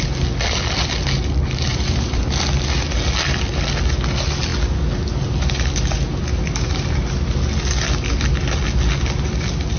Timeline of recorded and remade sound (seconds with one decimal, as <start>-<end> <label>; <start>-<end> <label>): 0.0-1.7 recorded; 1.7-2.4 remade; 2.4-9.8 recorded